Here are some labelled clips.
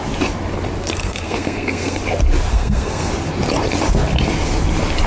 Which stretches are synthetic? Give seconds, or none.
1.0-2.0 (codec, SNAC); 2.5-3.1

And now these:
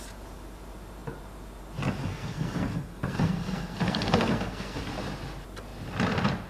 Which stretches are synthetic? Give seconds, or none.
2.0-4.8 (codec, SNAC)

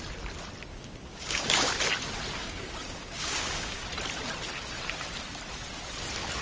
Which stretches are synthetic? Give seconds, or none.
0.7-1.7 (codec, DAC); 2.4-3.8

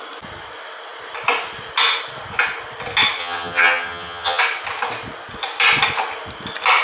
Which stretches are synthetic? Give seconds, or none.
3.2-4.4 (vocoder, HiFi-GAN)